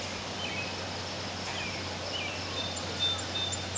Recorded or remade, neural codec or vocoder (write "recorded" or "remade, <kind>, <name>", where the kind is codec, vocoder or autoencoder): recorded